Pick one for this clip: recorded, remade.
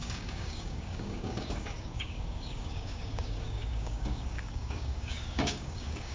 remade